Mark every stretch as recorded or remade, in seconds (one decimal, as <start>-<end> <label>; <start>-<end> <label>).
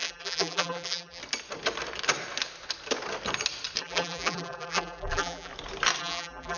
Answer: 0.0-1.2 remade; 1.2-3.8 recorded; 3.8-5.5 remade; 5.5-6.0 recorded; 6.0-6.6 remade